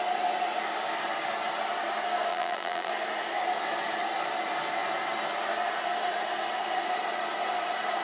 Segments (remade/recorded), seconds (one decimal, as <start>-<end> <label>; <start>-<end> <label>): 0.0-2.3 recorded; 2.3-2.9 remade; 2.9-8.0 recorded

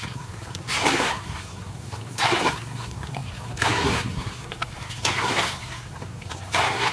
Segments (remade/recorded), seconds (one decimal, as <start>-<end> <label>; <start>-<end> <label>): 0.0-6.9 remade

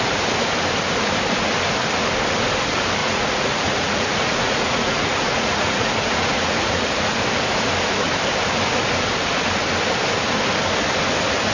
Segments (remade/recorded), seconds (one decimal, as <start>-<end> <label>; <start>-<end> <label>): 0.0-3.0 recorded; 3.0-7.2 remade; 7.2-11.5 recorded

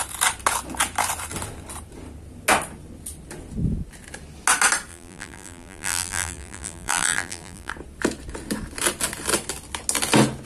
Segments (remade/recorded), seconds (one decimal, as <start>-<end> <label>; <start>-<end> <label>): 0.0-4.9 recorded; 4.9-7.7 remade; 7.7-10.5 recorded

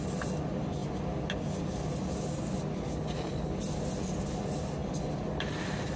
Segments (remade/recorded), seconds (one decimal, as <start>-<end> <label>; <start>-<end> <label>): 0.0-6.0 recorded

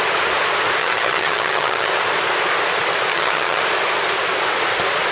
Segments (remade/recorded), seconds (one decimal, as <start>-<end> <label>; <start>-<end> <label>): 0.0-0.8 recorded; 0.8-1.9 remade; 1.9-3.1 recorded; 3.1-3.6 remade; 3.6-5.1 recorded

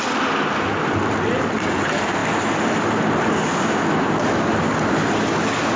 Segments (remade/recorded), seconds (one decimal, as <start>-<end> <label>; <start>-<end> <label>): 0.0-5.8 recorded